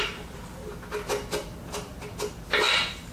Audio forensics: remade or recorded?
recorded